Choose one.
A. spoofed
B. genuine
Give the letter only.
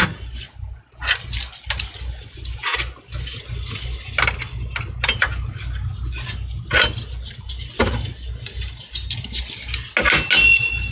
B